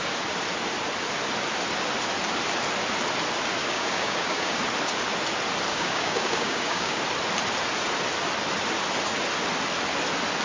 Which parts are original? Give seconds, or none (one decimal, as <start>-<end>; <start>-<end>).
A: 0.0-3.6; 4.6-5.7; 7.0-10.4